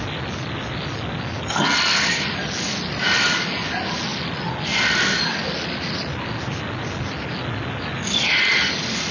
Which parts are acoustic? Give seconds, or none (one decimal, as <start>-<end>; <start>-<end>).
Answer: 0.0-9.1